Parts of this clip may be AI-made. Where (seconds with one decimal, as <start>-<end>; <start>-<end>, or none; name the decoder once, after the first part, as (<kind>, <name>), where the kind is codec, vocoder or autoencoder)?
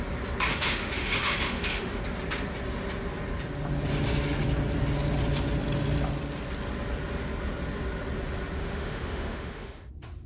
0.5-2.0 (autoencoder, DAC-VAE); 8.6-9.9